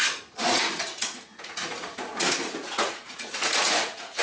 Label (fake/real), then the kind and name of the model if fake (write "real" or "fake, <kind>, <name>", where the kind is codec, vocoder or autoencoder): fake, vocoder, Vocos